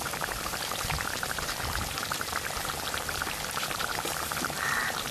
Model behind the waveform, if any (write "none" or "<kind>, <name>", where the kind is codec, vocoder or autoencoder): vocoder, BigVGAN v2